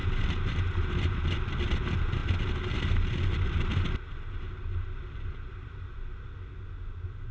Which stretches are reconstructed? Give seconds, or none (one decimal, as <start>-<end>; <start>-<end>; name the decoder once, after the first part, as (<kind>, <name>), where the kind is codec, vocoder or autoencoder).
none